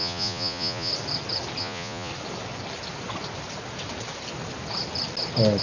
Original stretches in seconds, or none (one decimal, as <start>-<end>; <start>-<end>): 0.9-1.6; 2.1-5.6